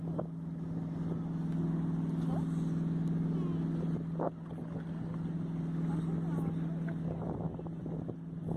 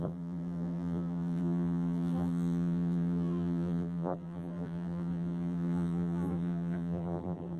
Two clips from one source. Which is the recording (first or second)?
first